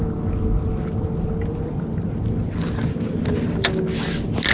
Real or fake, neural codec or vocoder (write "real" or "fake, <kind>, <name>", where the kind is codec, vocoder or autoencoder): real